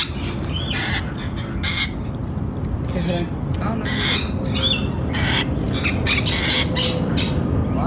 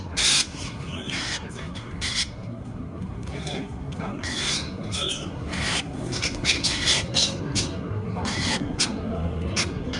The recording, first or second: first